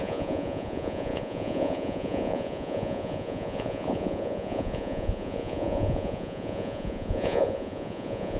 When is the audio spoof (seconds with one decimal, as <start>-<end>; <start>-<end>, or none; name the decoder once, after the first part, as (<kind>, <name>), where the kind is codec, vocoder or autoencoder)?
0.0-8.4 (vocoder, Vocos)